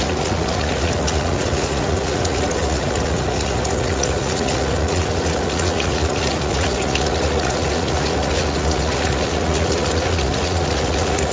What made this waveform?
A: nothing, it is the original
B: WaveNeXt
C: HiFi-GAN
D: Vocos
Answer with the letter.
D